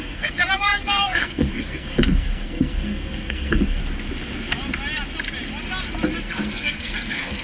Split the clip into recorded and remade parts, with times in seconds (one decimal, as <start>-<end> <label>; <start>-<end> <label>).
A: 0.0-3.8 remade; 3.8-6.2 recorded; 6.2-7.4 remade